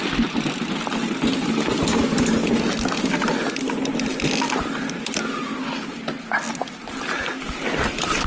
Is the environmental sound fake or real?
real